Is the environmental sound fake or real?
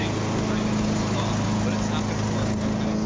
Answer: real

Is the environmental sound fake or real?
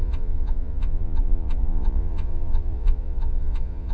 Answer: fake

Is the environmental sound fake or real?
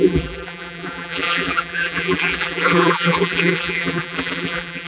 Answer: fake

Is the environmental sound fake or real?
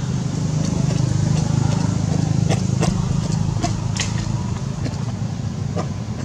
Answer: real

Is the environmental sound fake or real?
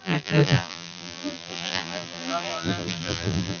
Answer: fake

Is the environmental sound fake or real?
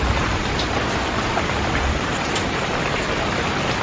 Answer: real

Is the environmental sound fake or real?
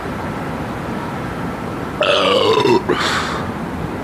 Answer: real